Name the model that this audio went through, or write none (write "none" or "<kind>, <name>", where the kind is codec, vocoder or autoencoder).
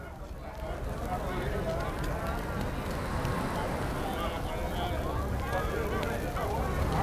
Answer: none